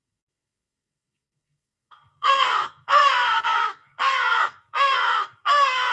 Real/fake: fake